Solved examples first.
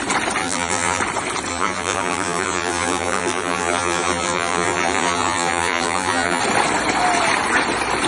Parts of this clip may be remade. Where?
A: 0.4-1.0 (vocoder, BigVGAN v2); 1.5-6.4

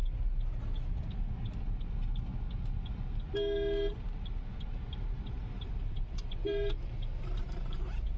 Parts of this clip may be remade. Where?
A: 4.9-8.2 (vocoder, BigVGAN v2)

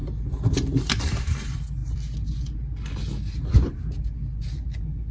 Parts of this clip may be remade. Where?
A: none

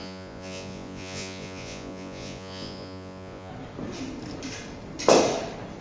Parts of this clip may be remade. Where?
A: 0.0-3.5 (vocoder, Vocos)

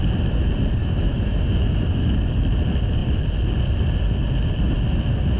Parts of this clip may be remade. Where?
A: 0.8-2.0 (autoencoder, DAC-VAE)

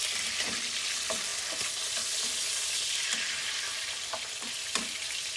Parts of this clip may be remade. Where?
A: none

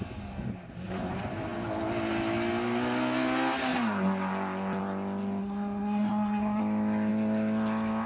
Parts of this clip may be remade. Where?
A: 5.4-6.6 (codec, SNAC)